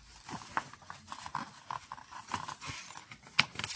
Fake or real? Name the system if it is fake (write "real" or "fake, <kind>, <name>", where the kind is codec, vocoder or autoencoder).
real